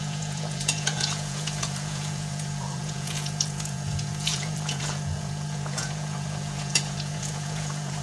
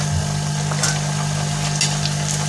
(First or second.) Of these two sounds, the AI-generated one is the first